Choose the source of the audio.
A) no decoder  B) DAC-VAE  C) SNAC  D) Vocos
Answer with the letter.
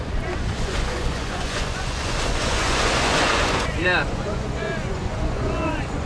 D